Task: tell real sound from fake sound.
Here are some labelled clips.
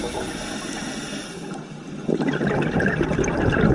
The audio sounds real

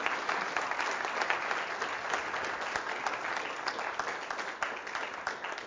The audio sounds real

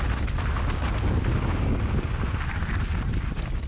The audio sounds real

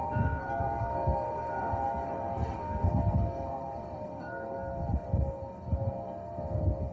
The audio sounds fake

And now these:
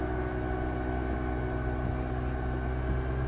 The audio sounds real